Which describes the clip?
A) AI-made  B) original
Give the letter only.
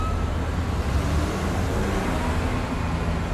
B